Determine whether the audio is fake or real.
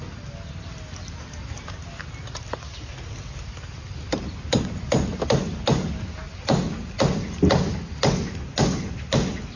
real